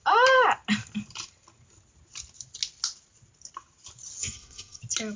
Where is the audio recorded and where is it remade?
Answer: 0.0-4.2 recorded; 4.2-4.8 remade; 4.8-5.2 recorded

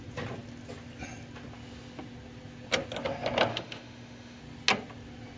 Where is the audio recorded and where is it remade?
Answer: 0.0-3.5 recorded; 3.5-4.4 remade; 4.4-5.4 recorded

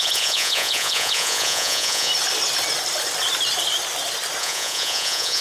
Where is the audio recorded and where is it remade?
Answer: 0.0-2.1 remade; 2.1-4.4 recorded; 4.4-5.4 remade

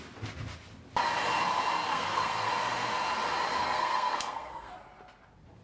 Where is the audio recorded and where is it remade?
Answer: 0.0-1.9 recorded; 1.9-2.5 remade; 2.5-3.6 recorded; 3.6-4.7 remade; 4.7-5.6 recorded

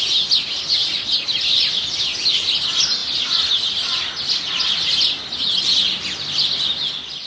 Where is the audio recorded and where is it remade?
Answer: 0.0-7.3 recorded

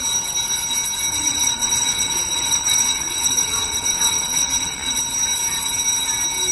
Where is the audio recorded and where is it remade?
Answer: 0.0-1.1 recorded; 1.1-5.0 remade; 5.0-6.5 recorded